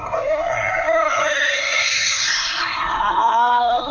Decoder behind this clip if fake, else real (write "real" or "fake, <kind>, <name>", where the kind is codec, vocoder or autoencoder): fake, codec, SNAC